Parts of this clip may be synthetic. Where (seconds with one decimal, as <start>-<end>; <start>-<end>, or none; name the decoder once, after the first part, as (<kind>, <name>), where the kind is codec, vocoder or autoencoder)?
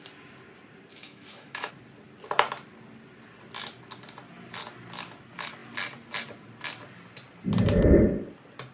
0.9-1.7 (autoencoder, DAC-VAE)